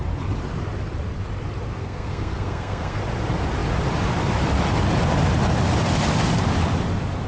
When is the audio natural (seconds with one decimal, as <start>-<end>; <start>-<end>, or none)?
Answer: 0.0-1.8; 3.0-7.3